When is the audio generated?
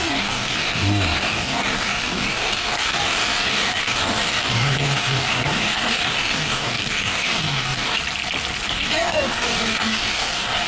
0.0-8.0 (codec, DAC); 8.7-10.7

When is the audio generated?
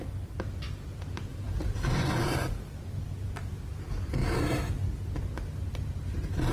1.3-2.5 (vocoder, BigVGAN v2)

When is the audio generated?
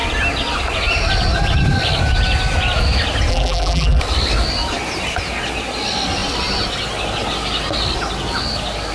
3.3-4.0 (vocoder, BigVGAN v2)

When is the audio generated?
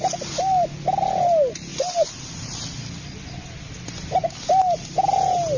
none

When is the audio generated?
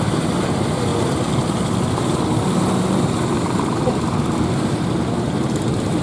none